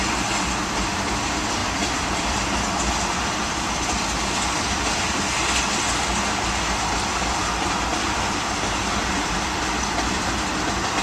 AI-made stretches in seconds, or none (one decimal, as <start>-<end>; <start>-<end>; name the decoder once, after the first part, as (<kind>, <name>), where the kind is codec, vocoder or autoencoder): 1.6-4.0 (vocoder, BigVGAN v2); 7.9-10.1